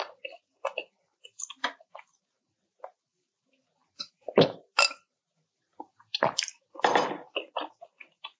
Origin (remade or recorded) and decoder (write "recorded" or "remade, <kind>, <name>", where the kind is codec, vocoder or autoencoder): recorded